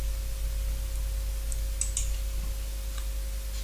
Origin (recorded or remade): recorded